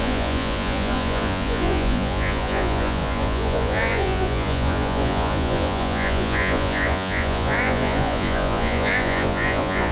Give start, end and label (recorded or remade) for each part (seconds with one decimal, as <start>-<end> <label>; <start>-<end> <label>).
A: 0.0-9.9 remade